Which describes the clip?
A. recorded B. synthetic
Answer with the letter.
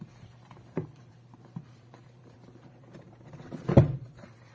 B